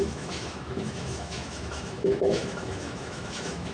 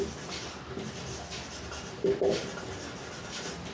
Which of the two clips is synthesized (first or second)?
first